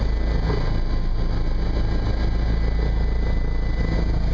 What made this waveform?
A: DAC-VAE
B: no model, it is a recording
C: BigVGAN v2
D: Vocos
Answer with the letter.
B